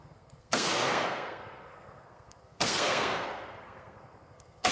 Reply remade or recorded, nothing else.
remade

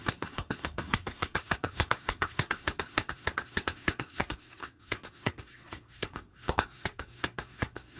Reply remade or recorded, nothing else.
remade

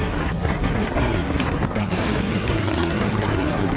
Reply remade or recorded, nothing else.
remade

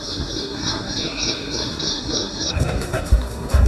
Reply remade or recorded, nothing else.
remade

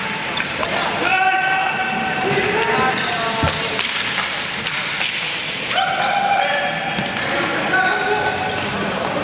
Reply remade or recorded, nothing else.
recorded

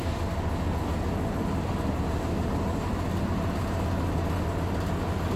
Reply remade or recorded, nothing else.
recorded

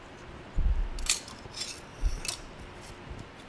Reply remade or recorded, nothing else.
recorded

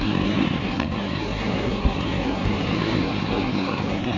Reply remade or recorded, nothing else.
remade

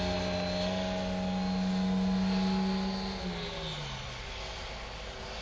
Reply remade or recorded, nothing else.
recorded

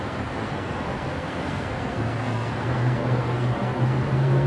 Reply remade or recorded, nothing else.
remade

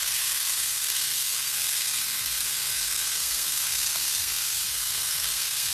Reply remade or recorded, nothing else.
remade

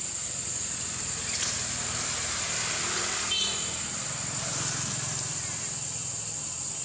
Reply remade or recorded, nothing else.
recorded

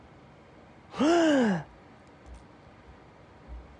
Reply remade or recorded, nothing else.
recorded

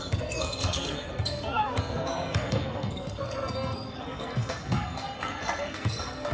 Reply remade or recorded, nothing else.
remade